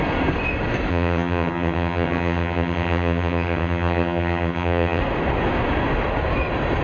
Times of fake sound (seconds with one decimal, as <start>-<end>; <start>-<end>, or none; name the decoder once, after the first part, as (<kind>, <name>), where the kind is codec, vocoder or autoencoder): 0.9-5.0 (vocoder, HiFi-GAN)